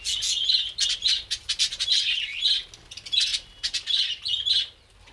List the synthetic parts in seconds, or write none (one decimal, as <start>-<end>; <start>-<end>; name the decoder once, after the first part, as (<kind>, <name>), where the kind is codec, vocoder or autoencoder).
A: none